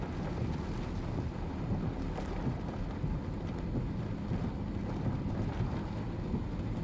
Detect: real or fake real